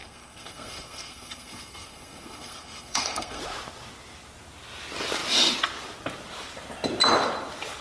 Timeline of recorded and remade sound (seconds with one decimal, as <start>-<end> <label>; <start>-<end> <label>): 0.0-3.4 remade; 3.4-7.8 recorded